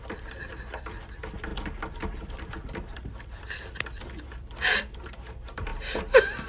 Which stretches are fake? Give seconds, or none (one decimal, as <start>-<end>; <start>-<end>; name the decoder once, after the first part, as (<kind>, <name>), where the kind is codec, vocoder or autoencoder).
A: 0.0-5.7 (vocoder, BigVGAN v2)